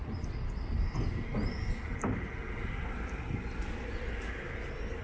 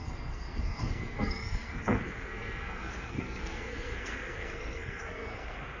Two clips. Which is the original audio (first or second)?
first